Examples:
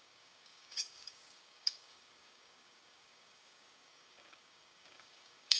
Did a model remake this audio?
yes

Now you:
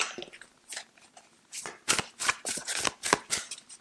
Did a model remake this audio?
no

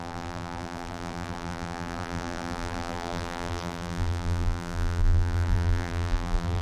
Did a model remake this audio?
yes